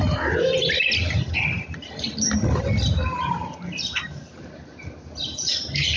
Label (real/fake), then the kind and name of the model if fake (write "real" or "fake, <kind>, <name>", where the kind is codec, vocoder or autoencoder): real